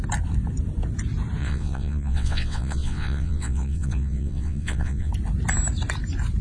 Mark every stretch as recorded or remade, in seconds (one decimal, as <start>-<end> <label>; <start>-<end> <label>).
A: 0.0-1.4 recorded; 1.4-5.1 remade; 5.1-6.4 recorded